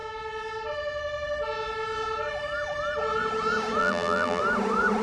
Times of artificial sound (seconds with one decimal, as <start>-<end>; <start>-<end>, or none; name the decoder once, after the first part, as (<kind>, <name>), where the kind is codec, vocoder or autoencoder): 3.8-4.4 (vocoder, BigVGAN v2)